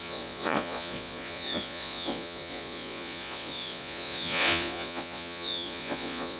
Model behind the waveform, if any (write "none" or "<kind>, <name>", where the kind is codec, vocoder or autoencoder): vocoder, Vocos